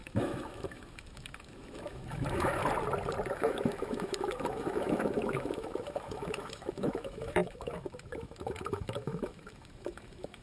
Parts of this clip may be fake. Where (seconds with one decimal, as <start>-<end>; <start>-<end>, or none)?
0.0-2.6; 3.3-10.4